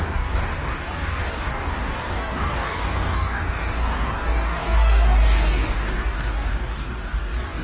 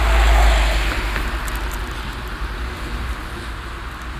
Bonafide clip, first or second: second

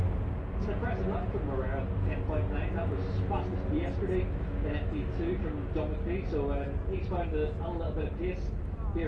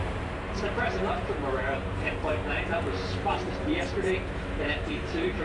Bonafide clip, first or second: first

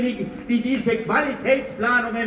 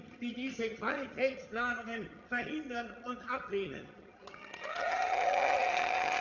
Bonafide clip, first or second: first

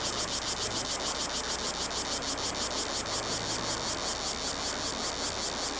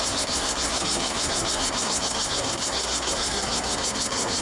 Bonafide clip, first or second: first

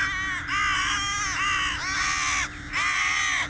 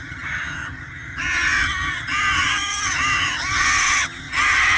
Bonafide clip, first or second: first